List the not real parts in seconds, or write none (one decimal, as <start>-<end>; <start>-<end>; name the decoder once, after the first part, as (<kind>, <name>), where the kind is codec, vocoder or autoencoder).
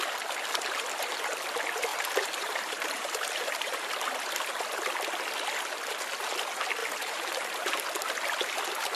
1.9-3.9 (vocoder, BigVGAN v2); 6.8-7.7